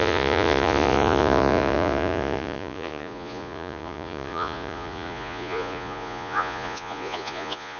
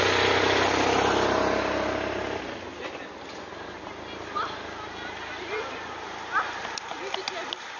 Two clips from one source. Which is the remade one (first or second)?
first